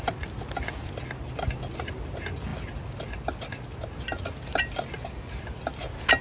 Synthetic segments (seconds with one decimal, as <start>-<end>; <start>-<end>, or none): none